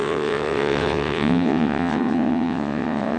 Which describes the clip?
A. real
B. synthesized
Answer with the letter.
B